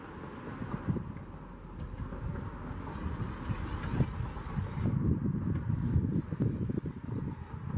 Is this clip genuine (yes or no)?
yes